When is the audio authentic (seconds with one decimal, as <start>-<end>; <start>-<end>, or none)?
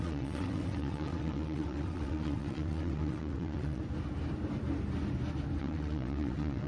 3.8-5.6